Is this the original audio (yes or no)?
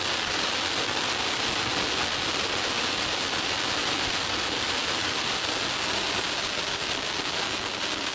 yes